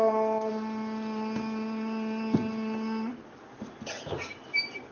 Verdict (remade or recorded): recorded